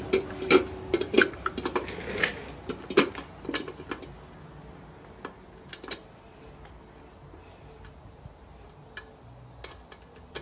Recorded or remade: recorded